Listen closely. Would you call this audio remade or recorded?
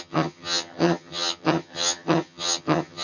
remade